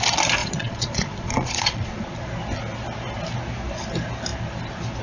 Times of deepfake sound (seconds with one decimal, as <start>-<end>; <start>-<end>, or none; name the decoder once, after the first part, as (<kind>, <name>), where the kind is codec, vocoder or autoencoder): 0.4-2.3 (vocoder, Vocos)